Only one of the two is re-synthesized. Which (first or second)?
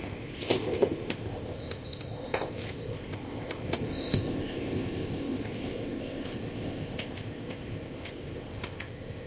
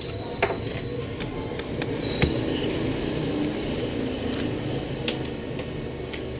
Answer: first